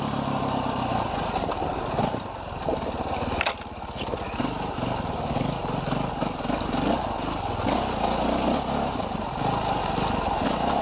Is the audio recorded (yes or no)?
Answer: yes